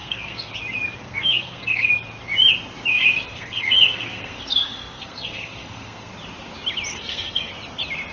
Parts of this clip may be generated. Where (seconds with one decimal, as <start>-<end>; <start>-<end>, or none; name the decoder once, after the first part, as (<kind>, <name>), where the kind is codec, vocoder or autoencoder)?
0.0-0.5 (codec, SNAC); 1.0-1.9; 2.9-6.1; 6.9-7.5